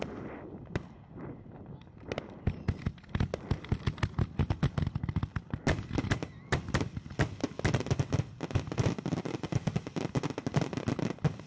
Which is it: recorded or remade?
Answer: recorded